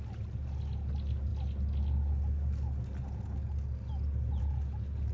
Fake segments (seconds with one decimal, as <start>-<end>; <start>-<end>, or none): none